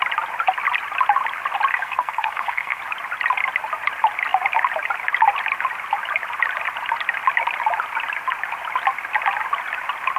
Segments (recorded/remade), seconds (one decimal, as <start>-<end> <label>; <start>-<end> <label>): 0.0-1.7 recorded; 1.7-2.8 remade; 2.8-10.2 recorded